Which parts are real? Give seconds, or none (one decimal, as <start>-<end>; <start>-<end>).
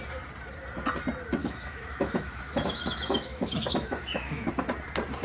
0.0-1.4; 4.5-5.2